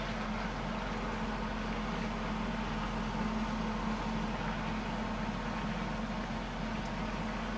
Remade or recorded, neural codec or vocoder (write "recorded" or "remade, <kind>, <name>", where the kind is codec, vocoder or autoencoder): recorded